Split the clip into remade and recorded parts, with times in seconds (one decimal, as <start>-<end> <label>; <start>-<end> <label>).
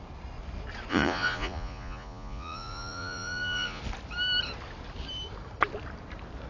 0.0-0.9 recorded; 0.9-3.8 remade; 3.8-6.5 recorded